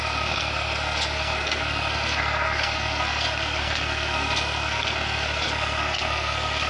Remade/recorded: remade